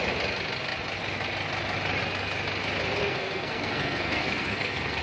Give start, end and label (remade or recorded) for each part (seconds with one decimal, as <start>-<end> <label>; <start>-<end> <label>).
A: 0.0-3.0 recorded; 3.0-5.0 remade